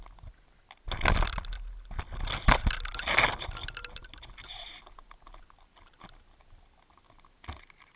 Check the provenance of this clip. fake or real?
real